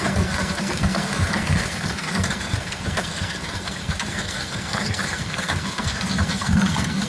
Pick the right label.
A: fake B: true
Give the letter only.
A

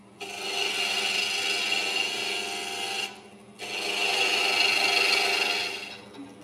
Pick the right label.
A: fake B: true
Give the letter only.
B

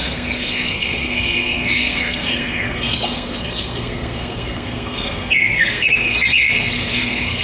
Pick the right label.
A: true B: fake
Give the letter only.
B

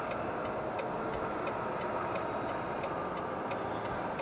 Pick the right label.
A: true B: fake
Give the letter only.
A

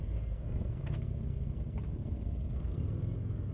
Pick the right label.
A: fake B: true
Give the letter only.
A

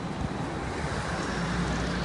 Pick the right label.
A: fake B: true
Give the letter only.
B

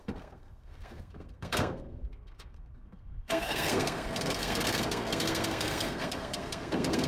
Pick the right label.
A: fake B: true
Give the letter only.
A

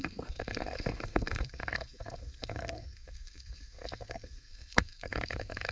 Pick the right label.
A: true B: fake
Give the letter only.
B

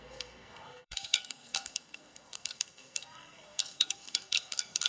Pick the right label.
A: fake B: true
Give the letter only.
A